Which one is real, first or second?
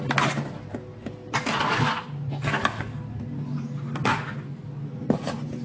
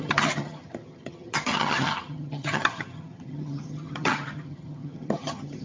first